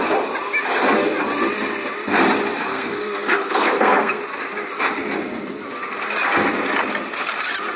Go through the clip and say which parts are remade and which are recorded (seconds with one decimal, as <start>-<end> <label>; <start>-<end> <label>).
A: 0.0-2.7 recorded; 2.7-4.2 remade; 4.2-7.8 recorded